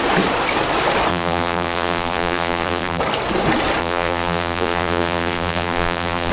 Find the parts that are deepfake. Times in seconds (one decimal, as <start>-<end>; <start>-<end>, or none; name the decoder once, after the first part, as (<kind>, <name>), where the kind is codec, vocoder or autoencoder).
1.1-3.0 (vocoder, BigVGAN v2); 3.8-6.3